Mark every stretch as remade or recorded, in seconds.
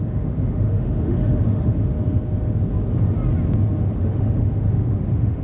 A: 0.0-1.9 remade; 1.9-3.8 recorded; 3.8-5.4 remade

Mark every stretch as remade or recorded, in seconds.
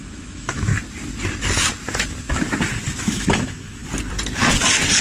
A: 0.0-0.7 remade; 0.7-3.0 recorded; 3.0-3.8 remade; 3.8-5.0 recorded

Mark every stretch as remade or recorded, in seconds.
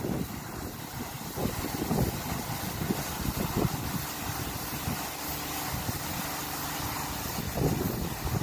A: 0.0-8.4 recorded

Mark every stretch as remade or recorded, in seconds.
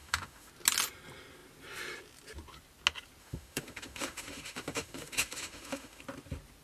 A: 0.0-0.5 remade; 0.5-3.2 recorded; 3.2-6.0 remade; 6.0-6.6 recorded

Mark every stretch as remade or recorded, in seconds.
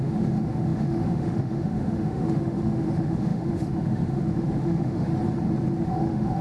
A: 0.0-5.1 remade; 5.1-5.8 recorded; 5.8-6.4 remade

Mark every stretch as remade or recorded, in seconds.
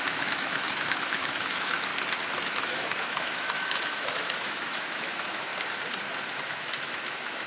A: 0.0-1.9 remade; 1.9-2.5 recorded; 2.5-5.5 remade; 5.5-6.5 recorded; 6.5-7.5 remade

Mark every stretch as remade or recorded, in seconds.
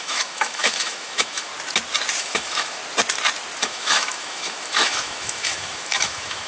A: 0.0-1.5 remade; 1.5-2.2 recorded; 2.2-2.8 remade; 2.8-3.6 recorded; 3.6-6.5 remade